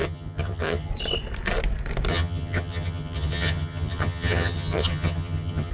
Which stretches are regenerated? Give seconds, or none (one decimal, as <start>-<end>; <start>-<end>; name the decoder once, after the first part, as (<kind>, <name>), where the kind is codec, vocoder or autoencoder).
0.0-0.9 (vocoder, HiFi-GAN); 2.1-5.7